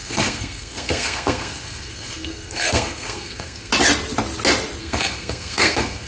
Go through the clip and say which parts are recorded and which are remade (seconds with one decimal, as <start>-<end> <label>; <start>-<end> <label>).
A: 0.0-3.7 remade; 3.7-4.8 recorded; 4.8-6.1 remade